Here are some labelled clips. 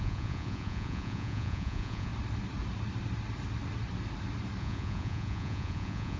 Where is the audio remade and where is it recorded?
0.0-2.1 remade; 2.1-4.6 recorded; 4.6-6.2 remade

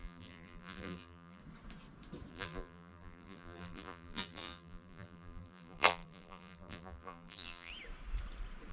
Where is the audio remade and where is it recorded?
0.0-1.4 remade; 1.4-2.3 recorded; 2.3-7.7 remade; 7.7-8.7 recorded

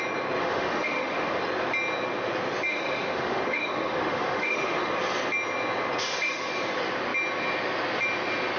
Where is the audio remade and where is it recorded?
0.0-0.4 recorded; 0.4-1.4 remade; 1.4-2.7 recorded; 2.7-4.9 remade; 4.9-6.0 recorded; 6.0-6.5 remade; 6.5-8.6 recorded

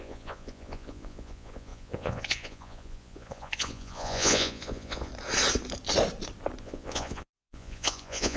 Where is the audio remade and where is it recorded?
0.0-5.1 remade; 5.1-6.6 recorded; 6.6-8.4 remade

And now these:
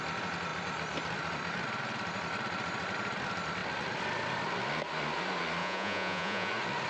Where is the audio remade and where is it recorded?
0.0-5.6 recorded; 5.6-6.5 remade; 6.5-6.9 recorded